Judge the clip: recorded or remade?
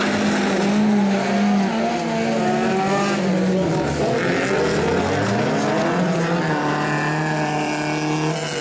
recorded